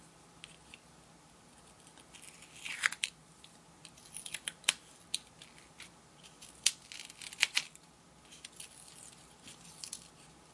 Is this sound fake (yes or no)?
no